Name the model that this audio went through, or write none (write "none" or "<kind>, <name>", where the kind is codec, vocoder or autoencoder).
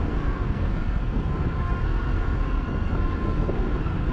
codec, SNAC